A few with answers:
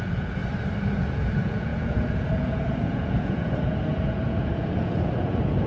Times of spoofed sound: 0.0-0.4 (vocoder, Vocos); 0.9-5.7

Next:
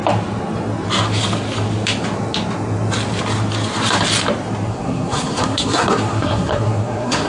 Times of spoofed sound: 4.7-7.3 (codec, SNAC)

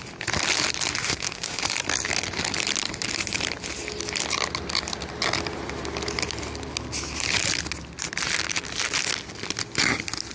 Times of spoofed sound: 1.0-1.6 (autoencoder, DAC-VAE)

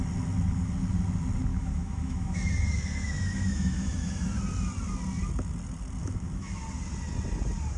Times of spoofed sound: 1.5-4.4 (autoencoder, DAC-VAE); 6.0-6.6

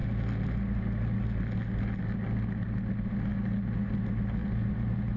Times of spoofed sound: 4.4-5.2 (vocoder, BigVGAN v2)

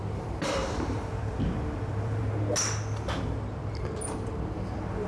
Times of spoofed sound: 0.0-2.2 (vocoder, BigVGAN v2)